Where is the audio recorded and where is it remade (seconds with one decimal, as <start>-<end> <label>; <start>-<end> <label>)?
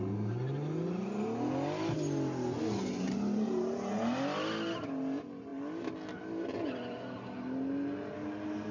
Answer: 0.0-8.7 recorded